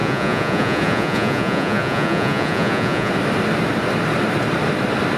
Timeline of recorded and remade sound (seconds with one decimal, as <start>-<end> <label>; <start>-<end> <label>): 0.0-3.1 remade; 3.1-5.2 recorded